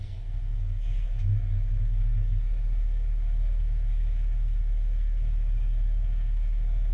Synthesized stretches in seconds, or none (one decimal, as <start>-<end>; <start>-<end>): 0.0-6.9